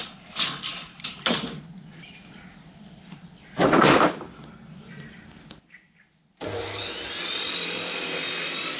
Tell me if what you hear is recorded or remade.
recorded